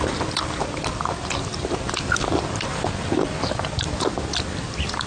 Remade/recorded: remade